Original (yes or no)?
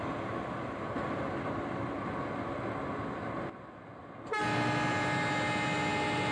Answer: yes